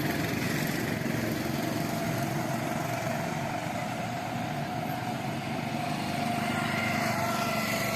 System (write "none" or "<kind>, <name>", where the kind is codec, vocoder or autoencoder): none